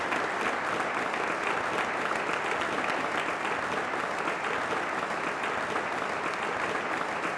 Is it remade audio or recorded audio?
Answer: recorded